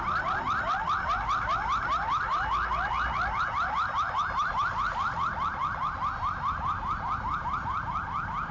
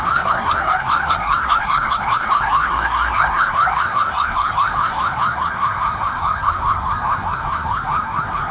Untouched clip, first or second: first